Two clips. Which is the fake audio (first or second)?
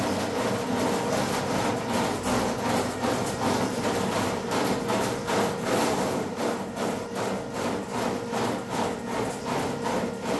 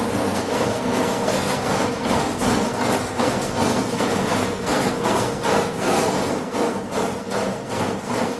second